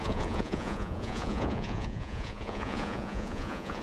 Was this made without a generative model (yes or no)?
no